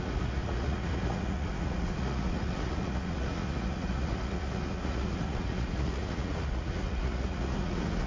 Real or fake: fake